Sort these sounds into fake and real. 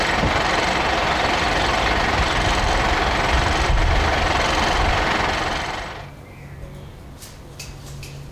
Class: real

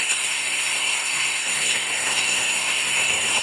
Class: fake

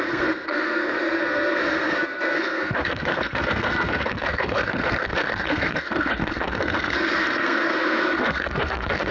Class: fake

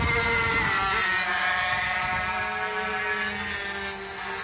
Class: real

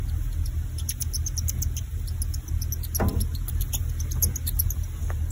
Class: real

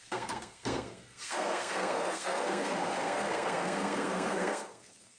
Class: fake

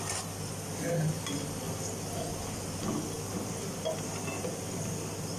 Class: real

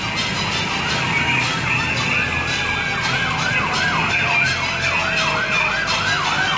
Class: real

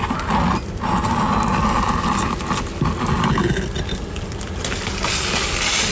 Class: real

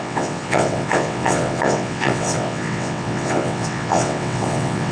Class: fake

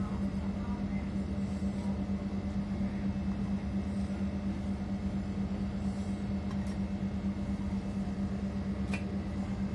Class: real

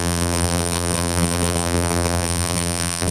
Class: fake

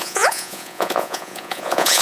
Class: fake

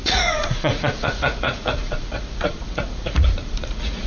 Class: fake